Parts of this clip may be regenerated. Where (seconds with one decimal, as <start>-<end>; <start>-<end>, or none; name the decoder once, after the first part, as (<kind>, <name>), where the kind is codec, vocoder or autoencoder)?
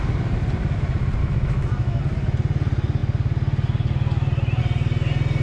1.2-2.0 (autoencoder, DAC-VAE)